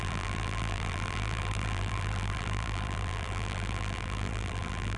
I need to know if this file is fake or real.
fake